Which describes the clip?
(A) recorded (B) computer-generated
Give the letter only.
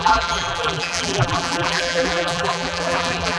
B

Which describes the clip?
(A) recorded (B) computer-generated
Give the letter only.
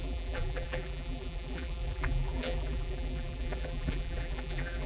B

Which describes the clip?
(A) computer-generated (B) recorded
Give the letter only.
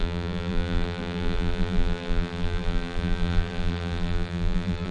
A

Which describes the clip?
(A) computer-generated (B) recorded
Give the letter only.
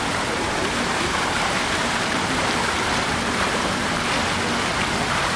A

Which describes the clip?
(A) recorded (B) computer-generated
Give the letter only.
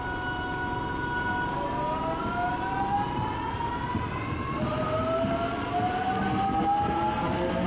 A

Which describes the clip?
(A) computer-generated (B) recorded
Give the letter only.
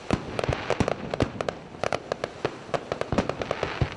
B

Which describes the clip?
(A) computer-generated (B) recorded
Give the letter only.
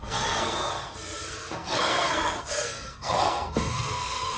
A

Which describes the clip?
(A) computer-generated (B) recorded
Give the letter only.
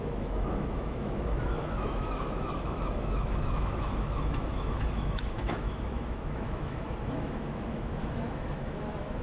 A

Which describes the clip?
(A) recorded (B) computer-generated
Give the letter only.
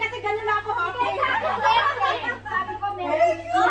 A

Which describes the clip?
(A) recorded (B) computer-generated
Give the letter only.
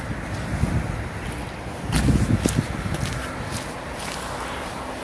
A